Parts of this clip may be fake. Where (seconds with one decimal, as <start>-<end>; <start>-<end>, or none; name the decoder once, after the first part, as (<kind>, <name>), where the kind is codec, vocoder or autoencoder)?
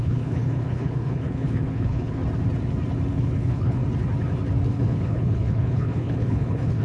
0.0-2.2 (codec, HILCodec); 3.1-3.8; 4.7-6.8